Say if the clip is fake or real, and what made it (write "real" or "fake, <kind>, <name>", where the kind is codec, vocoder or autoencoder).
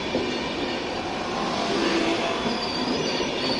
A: real